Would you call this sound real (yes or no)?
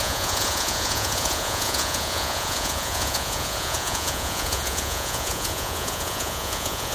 no